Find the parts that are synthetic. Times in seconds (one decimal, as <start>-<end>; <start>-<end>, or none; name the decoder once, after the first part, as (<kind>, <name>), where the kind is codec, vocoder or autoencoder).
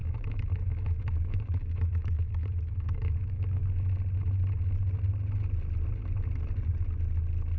0.0-3.6 (autoencoder, DAC-VAE)